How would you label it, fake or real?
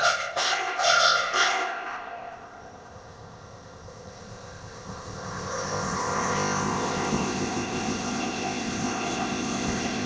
fake